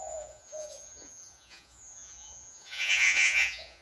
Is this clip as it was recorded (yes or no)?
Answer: no